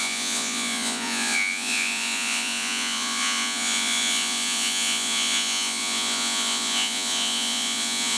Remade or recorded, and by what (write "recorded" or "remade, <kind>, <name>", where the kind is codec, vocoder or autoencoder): remade, vocoder, Vocos